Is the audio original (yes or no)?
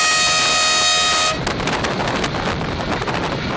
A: yes